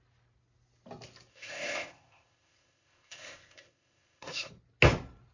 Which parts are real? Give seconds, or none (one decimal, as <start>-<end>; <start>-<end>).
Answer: 0.0-1.3; 4.5-5.3